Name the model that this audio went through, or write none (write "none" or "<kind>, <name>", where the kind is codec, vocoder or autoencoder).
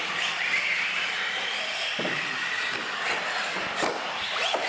none